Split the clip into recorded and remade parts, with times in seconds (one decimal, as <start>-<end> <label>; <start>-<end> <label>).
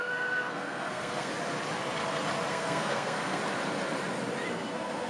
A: 0.0-1.3 remade; 1.3-2.5 recorded; 2.5-3.4 remade; 3.4-4.5 recorded; 4.5-5.1 remade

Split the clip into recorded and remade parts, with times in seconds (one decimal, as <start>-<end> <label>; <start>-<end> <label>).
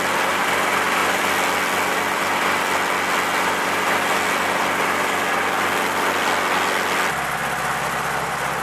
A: 0.0-8.6 recorded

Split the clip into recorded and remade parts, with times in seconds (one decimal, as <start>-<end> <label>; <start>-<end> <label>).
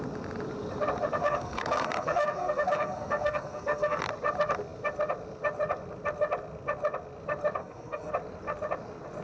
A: 0.0-1.2 recorded; 1.2-4.0 remade; 4.0-7.6 recorded; 7.6-8.1 remade; 8.1-9.2 recorded